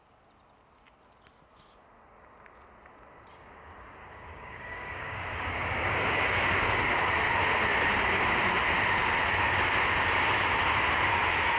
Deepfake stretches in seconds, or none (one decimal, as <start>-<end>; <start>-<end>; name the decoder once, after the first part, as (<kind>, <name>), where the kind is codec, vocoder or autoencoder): 3.3-7.3 (codec, DAC)